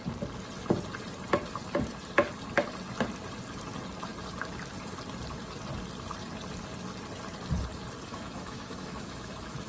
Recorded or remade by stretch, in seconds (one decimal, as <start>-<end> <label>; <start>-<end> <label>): 0.0-8.1 recorded; 8.1-9.7 remade